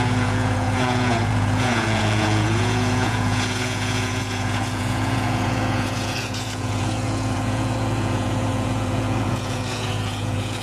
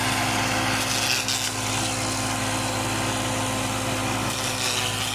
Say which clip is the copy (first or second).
first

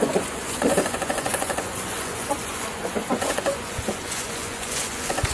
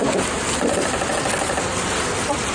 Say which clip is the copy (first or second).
first